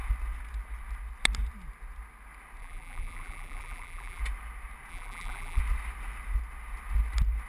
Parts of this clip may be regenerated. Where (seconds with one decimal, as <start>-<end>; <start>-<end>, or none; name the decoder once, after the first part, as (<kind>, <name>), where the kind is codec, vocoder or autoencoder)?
2.6-4.2 (vocoder, BigVGAN v2); 4.9-5.6